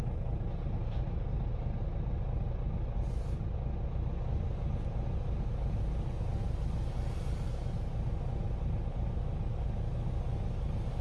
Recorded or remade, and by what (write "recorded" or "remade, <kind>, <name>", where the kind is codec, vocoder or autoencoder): recorded